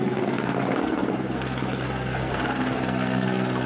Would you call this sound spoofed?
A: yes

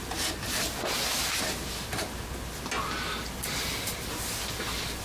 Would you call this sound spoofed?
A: no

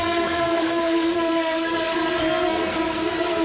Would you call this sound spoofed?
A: yes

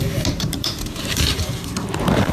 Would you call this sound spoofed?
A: yes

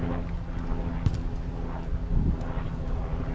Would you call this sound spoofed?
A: no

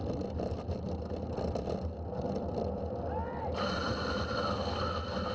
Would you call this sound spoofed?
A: no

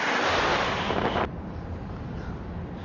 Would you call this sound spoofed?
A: no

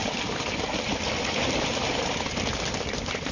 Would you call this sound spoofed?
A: no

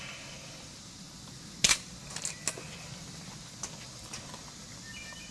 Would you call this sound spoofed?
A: no